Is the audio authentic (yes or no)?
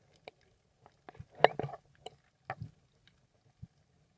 yes